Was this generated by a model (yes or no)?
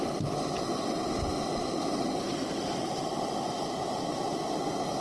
no